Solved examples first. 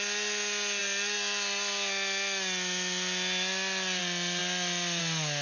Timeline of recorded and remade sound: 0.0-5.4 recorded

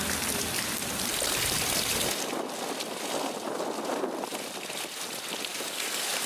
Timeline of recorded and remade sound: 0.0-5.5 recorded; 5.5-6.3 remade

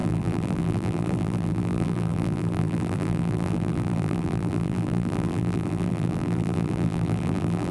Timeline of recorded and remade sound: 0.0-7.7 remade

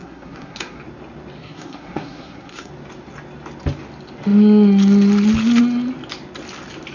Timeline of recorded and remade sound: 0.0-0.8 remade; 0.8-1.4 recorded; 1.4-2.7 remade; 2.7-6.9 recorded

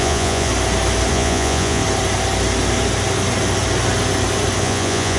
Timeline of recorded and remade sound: 0.0-0.5 remade; 0.5-1.1 recorded; 1.1-1.8 remade; 1.8-4.6 recorded; 4.6-5.2 remade

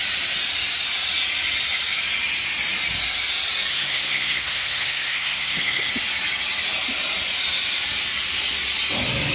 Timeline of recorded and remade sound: 0.0-3.7 recorded; 3.7-5.9 remade; 5.9-9.3 recorded

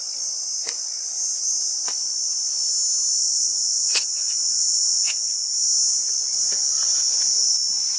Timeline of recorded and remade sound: 0.0-3.2 recorded; 3.2-5.5 remade; 5.5-8.0 recorded